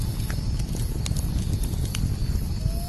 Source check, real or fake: real